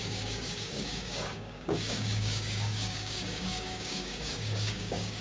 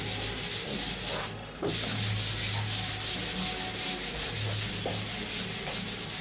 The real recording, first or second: second